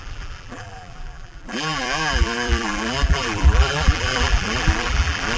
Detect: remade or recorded remade